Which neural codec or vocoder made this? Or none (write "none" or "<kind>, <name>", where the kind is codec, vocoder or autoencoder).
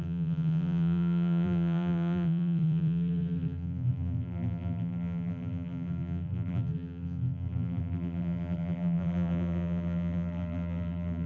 vocoder, BigVGAN v2